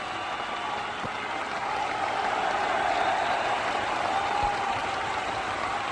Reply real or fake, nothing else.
real